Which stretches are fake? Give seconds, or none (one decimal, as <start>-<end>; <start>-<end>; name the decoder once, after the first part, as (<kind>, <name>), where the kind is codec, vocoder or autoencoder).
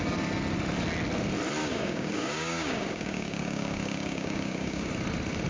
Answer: 1.6-4.9 (codec, DAC)